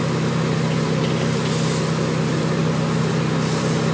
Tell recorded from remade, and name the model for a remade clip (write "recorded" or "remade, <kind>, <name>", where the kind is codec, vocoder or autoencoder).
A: recorded